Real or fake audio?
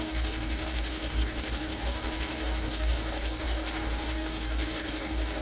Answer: fake